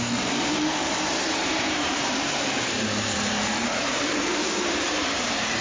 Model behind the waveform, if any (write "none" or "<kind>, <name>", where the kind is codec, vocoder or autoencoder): vocoder, BigVGAN v2